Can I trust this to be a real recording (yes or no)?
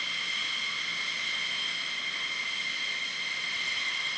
yes